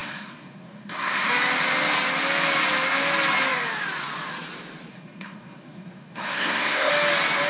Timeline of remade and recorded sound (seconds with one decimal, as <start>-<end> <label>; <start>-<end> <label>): 0.0-1.3 remade; 1.3-4.9 recorded; 4.9-6.9 remade; 6.9-7.5 recorded